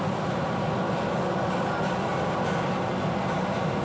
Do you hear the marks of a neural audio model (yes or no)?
no